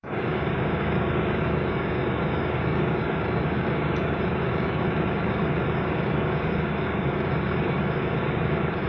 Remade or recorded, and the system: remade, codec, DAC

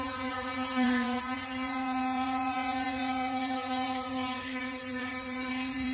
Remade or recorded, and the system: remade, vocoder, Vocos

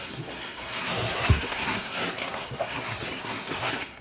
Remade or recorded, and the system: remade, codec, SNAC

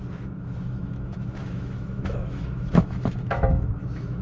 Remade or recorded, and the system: remade, autoencoder, DAC-VAE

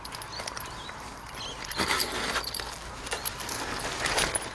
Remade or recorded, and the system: recorded